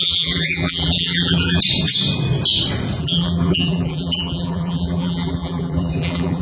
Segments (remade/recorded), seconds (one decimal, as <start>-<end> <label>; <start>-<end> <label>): 0.0-1.6 remade; 1.6-3.0 recorded; 3.0-6.4 remade